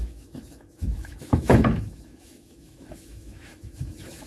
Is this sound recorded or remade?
remade